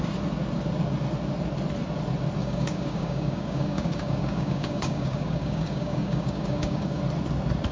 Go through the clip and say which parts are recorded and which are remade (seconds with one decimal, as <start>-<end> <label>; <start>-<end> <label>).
0.0-2.4 recorded; 2.4-7.0 remade; 7.0-7.7 recorded